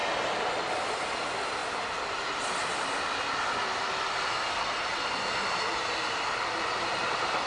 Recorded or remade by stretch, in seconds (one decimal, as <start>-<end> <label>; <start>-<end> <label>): 0.0-7.5 recorded